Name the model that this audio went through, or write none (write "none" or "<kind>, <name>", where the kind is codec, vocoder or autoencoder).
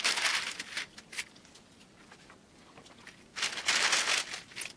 none